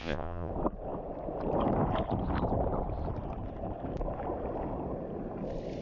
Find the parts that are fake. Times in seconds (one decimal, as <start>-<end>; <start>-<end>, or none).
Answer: 0.0-0.5